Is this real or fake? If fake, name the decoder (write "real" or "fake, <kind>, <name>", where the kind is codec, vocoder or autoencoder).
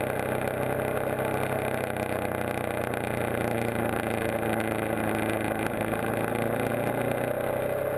real